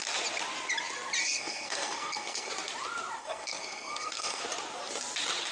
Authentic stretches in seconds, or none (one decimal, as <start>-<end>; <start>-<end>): 0.0-1.2; 2.5-3.2; 4.4-5.5